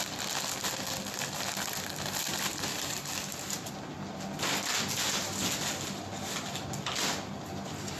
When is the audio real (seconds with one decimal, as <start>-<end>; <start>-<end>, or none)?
0.0-2.7; 3.7-8.0